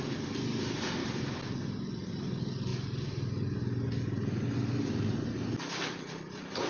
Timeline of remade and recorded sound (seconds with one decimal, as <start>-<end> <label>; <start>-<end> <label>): 0.0-2.7 remade; 2.7-4.8 recorded; 4.8-6.7 remade